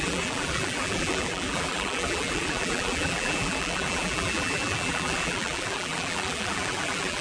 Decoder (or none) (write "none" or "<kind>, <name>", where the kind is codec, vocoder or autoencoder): vocoder, BigVGAN v2